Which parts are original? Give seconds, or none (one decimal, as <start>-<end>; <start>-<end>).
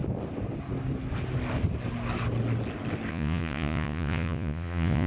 0.0-3.1